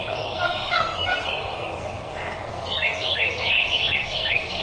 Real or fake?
fake